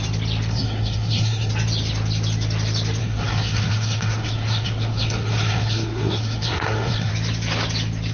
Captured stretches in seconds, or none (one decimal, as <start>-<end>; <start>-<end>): 0.0-0.5; 1.5-3.0; 7.1-8.1